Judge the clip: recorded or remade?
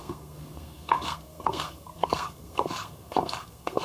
remade